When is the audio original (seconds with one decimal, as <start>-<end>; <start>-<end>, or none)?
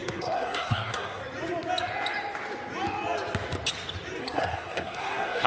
1.2-4.2